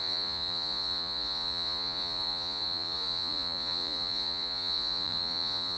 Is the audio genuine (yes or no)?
no